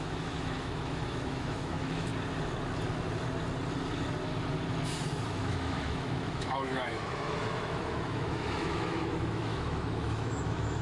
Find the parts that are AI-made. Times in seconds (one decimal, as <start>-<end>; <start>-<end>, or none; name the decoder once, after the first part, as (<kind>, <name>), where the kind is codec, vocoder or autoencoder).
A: 0.0-2.1 (autoencoder, DAC-VAE); 5.3-10.8